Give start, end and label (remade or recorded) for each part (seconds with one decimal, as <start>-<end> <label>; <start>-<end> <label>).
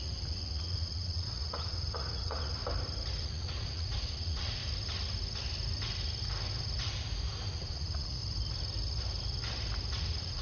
0.0-2.6 remade; 2.6-3.1 recorded; 3.1-4.6 remade; 4.6-7.5 recorded; 7.5-8.2 remade; 8.2-10.0 recorded; 10.0-10.4 remade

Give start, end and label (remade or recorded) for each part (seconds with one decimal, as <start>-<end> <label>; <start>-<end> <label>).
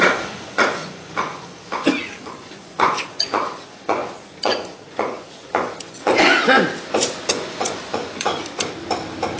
0.0-6.4 remade; 6.4-7.3 recorded; 7.3-8.3 remade; 8.3-9.4 recorded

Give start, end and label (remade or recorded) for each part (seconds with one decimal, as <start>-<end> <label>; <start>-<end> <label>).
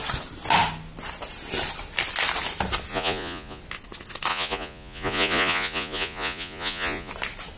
0.0-2.9 recorded; 2.9-3.6 remade; 3.6-4.3 recorded; 4.3-7.1 remade; 7.1-7.6 recorded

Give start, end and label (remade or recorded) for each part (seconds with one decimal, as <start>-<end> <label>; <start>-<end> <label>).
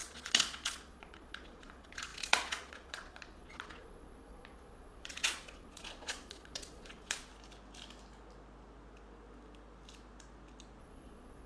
0.0-7.3 remade; 7.3-10.8 recorded; 10.8-11.5 remade